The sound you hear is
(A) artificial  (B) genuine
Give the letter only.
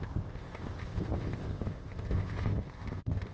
A